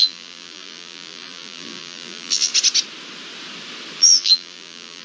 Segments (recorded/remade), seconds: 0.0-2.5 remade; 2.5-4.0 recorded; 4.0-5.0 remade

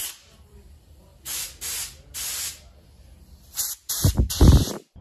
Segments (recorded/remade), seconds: 0.0-1.1 remade; 1.1-3.2 recorded; 3.2-5.0 remade